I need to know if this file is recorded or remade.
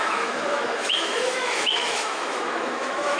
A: remade